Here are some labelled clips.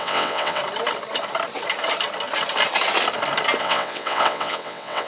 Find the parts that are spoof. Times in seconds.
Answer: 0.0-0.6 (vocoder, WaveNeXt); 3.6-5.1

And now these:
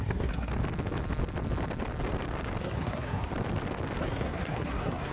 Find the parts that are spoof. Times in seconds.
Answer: 0.0-0.5 (codec, SNAC); 2.6-3.3; 4.0-5.1

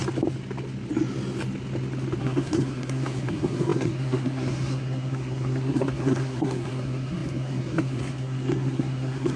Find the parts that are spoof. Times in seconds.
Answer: 2.2-9.4 (codec, SNAC)

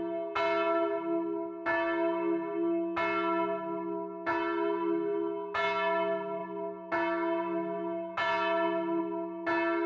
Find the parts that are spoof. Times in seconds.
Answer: none

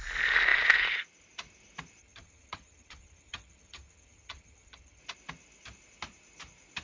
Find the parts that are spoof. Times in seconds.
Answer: 2.0-5.0 (vocoder, HiFi-GAN)

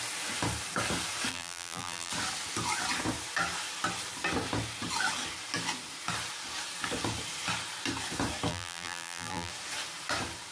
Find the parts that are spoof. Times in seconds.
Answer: 1.3-2.1 (vocoder, BigVGAN v2); 8.5-9.5

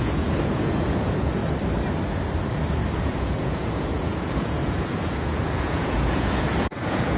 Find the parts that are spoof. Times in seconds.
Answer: 0.0-1.4 (vocoder, Vocos); 3.0-7.2